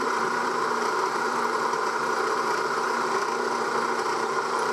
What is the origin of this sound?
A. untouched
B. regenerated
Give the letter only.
B